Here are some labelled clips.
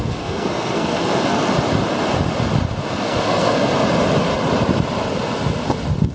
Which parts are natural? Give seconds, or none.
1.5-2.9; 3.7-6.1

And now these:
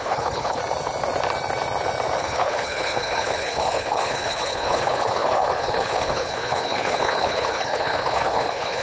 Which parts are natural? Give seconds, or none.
0.6-2.2

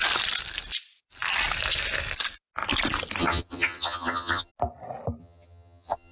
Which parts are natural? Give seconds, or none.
0.0-3.2; 4.5-5.2

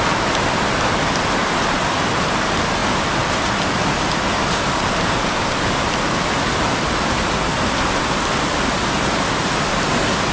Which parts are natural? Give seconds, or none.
0.0-10.3

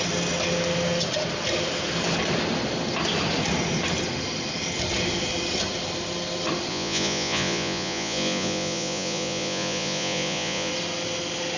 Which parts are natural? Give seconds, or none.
0.0-6.7; 10.7-11.6

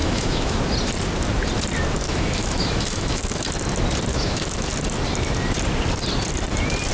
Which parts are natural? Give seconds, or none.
0.6-2.0; 3.4-4.1; 4.7-6.9